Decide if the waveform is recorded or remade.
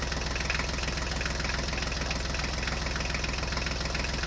recorded